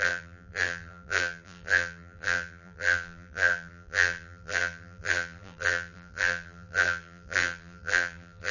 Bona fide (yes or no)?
no